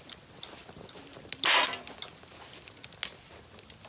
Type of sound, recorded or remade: recorded